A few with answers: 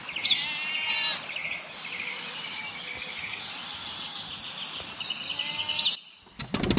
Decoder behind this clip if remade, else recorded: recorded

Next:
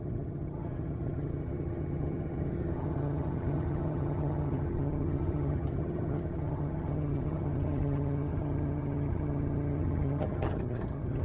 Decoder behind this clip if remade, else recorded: remade, vocoder, HiFi-GAN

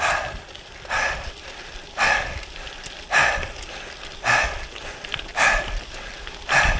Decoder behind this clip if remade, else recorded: recorded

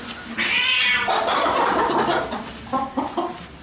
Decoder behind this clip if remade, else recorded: recorded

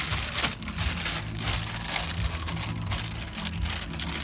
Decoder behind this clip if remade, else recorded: recorded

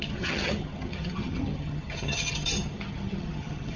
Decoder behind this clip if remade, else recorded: remade, vocoder, HiFi-GAN